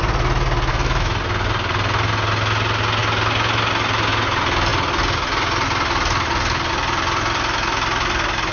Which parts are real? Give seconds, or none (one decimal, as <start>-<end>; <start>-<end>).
0.0-0.7; 1.2-8.5